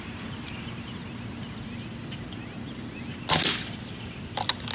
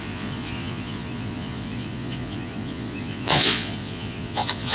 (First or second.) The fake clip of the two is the second